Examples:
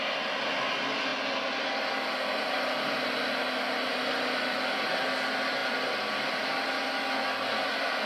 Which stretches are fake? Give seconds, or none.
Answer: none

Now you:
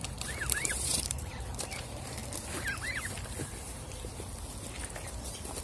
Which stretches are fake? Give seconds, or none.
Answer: 0.0-2.2